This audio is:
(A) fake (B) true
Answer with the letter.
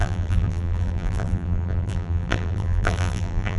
A